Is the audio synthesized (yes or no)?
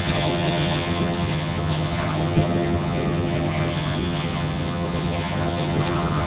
yes